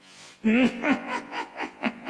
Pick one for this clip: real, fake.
fake